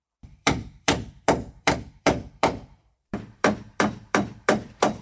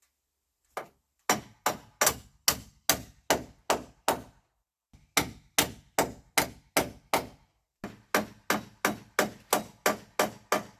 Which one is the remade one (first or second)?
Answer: first